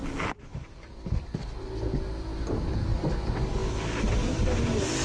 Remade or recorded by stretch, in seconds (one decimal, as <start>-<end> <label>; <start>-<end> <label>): 0.0-5.0 recorded